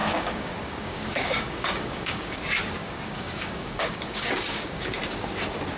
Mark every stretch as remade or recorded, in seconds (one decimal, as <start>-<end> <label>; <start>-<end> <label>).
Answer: 0.0-2.4 remade; 2.4-2.8 recorded; 2.8-5.0 remade; 5.0-5.8 recorded